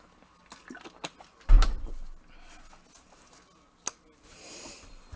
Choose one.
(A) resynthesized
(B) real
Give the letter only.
B